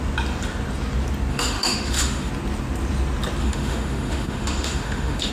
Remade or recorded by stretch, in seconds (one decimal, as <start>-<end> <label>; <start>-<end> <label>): 0.0-1.3 recorded; 1.3-2.3 remade; 2.3-3.4 recorded; 3.4-5.3 remade